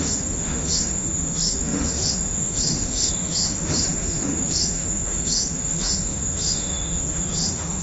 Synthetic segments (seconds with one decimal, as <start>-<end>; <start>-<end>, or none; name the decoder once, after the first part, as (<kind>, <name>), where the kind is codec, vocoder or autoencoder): 0.0-7.8 (autoencoder, DAC-VAE)